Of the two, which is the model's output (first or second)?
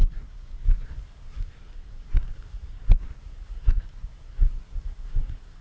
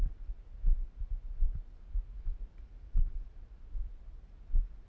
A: first